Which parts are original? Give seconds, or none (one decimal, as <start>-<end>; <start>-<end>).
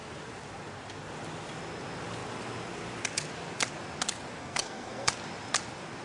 0.0-4.4; 5.1-6.0